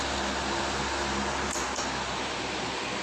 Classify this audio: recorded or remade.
recorded